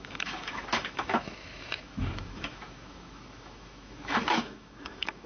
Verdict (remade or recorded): remade